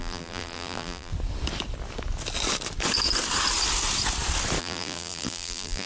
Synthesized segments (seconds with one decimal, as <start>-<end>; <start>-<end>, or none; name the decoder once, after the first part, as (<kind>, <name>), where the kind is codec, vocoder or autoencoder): 0.0-1.1 (vocoder, BigVGAN v2); 4.6-5.9